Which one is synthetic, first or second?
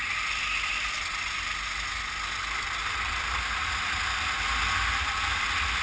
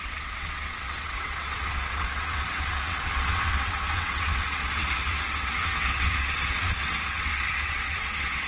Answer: second